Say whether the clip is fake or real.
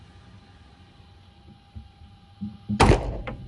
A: real